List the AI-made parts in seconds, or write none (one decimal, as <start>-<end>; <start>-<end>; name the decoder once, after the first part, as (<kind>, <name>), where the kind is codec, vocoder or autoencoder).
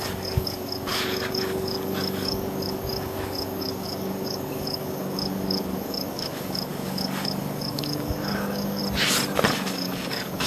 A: 0.0-8.8 (codec, DAC); 9.5-10.5